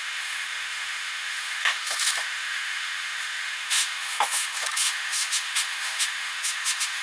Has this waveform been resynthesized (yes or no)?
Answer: yes